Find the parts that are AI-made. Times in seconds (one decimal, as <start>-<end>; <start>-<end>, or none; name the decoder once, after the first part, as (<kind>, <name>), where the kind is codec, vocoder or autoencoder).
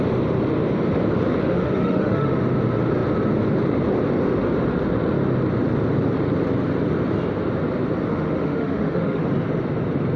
1.4-2.3 (autoencoder, DAC-VAE); 8.1-9.2